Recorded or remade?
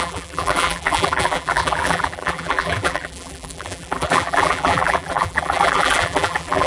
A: remade